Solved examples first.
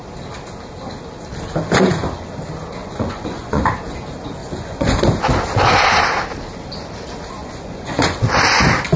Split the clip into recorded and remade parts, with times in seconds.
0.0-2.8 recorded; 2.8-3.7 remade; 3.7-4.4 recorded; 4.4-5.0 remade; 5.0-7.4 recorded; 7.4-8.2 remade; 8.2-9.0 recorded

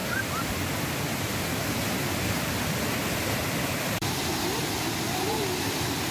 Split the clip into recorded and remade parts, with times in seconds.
0.0-3.0 recorded; 3.0-4.2 remade; 4.2-6.1 recorded

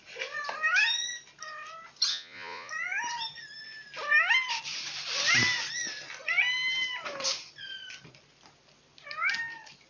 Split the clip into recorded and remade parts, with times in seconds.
0.0-2.1 recorded; 2.1-2.7 remade; 2.7-9.9 recorded

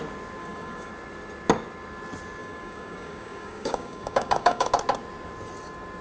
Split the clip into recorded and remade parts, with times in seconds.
0.0-0.4 recorded; 0.4-0.9 remade; 0.9-2.4 recorded; 2.4-4.7 remade; 4.7-6.0 recorded